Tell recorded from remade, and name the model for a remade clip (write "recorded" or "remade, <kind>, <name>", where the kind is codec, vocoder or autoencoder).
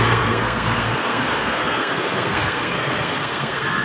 remade, codec, SNAC